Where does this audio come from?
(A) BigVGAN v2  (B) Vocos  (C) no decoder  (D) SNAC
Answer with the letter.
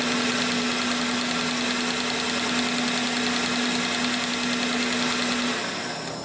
C